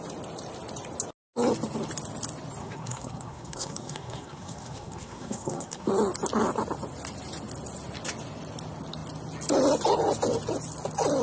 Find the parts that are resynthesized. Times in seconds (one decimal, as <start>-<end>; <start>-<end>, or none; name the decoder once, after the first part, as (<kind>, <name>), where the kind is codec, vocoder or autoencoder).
2.6-5.9 (codec, SNAC)